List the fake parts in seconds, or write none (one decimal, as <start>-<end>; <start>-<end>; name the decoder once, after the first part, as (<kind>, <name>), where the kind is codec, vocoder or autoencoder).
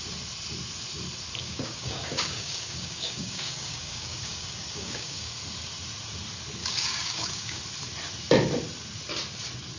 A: 1.4-5.3 (codec, DAC); 6.6-7.6